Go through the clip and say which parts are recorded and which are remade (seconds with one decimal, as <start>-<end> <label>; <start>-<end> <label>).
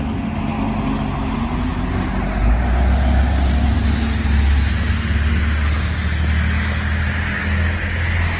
0.0-8.4 recorded